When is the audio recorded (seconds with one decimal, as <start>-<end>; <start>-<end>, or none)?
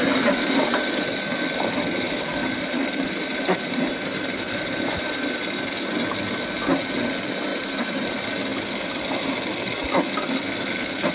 0.0-2.4; 5.3-7.5; 8.1-11.1